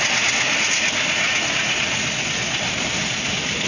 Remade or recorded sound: recorded